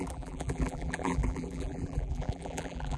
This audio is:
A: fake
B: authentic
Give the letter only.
A